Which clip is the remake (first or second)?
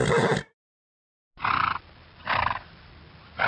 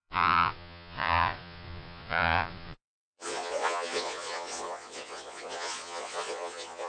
second